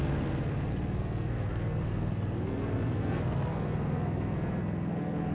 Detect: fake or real fake